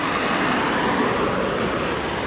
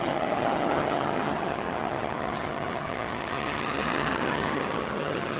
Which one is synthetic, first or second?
second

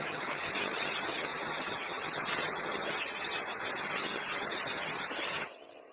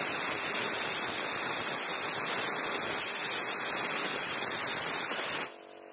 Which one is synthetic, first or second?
first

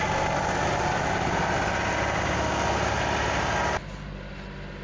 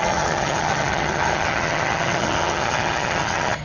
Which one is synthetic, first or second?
second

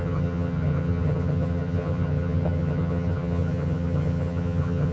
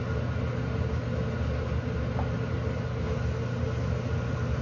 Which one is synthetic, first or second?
first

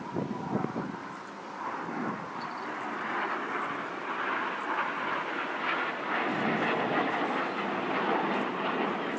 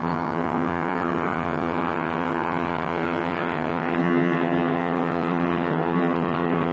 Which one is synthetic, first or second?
second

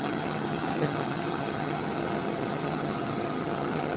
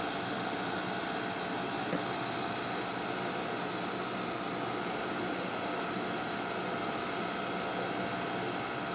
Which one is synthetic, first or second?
first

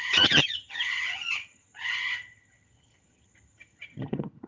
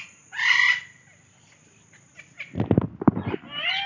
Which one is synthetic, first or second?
first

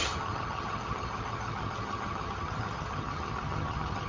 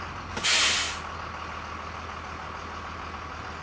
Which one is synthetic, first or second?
first